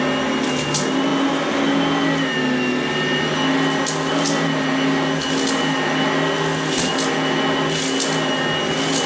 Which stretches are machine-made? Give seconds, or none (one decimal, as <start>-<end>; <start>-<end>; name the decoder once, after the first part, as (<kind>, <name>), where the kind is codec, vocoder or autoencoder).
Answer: none